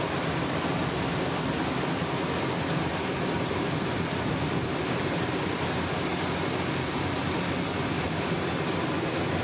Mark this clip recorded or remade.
recorded